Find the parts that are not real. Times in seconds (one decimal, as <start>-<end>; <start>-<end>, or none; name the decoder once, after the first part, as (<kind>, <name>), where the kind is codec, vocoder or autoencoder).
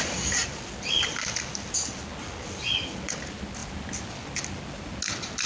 none